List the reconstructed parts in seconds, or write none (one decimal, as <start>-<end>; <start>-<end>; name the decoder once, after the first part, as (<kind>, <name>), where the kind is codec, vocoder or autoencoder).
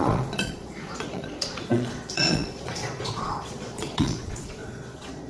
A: 0.0-5.3 (vocoder, Vocos)